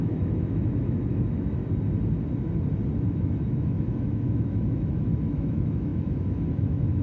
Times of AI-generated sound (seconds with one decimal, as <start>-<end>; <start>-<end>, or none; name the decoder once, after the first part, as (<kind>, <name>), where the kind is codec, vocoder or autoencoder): 0.0-1.6 (autoencoder, DAC-VAE); 3.1-7.0